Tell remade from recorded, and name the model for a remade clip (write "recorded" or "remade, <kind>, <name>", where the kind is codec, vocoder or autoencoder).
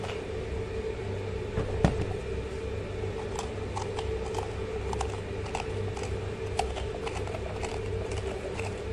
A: recorded